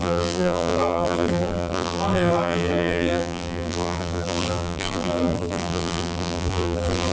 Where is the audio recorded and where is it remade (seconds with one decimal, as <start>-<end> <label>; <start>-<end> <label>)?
0.0-7.1 remade